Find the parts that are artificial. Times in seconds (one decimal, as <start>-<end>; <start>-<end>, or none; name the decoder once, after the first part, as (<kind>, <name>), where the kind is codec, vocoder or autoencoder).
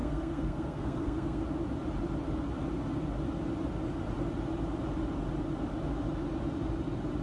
0.0-1.4 (codec, SNAC)